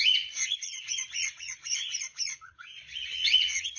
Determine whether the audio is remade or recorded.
remade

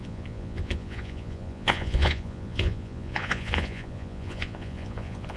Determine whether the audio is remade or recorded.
remade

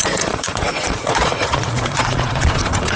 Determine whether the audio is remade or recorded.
remade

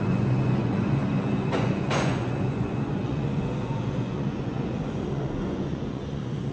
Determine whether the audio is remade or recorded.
remade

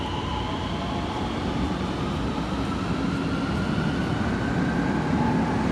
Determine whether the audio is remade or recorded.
recorded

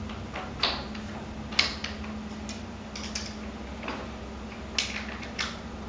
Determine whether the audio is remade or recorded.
recorded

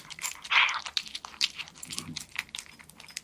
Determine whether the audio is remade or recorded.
recorded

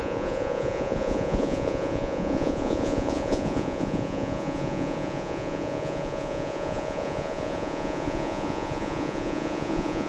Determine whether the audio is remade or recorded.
remade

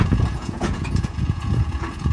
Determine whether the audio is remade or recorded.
remade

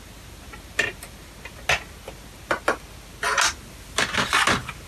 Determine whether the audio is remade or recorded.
recorded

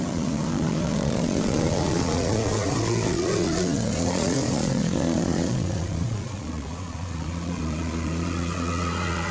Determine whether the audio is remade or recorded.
remade